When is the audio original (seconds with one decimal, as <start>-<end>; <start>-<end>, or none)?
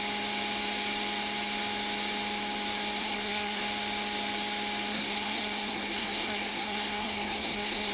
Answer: 0.0-3.0; 3.6-4.9